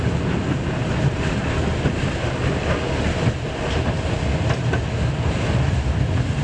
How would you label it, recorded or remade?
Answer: recorded